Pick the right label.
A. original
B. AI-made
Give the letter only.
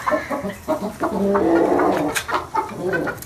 A